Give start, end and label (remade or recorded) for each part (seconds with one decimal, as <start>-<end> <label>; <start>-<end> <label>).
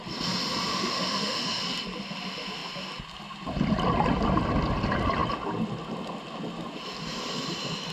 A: 0.0-0.7 recorded; 0.7-1.6 remade; 1.6-7.9 recorded